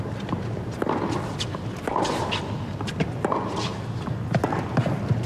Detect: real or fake real